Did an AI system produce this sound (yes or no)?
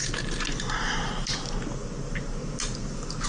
no